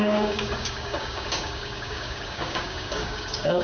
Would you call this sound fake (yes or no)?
yes